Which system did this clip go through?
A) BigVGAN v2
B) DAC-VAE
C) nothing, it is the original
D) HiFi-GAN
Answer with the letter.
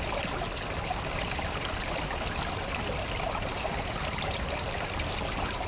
C